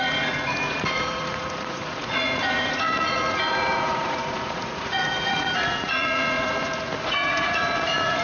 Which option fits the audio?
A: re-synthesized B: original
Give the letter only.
A